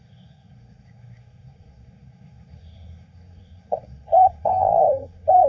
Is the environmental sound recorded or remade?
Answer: remade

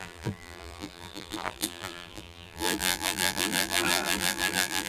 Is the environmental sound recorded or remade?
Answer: remade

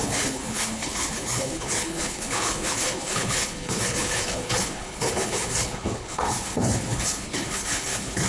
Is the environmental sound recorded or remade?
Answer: remade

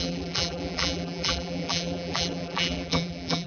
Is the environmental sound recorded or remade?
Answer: remade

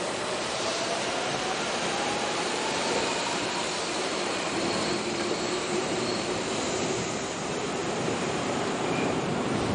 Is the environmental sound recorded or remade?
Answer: remade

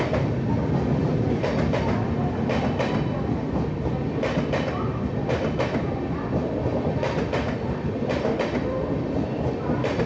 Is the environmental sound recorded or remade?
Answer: recorded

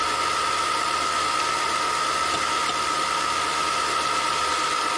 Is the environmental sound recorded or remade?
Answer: recorded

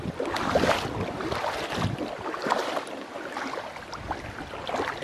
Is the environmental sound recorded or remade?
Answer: recorded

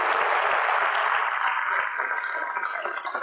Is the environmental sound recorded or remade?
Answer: recorded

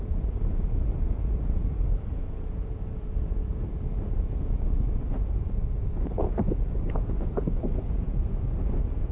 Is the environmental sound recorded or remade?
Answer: remade